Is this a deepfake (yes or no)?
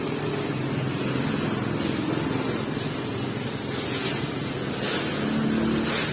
no